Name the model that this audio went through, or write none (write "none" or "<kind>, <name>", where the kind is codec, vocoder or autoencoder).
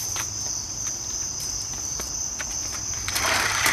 vocoder, BigVGAN v2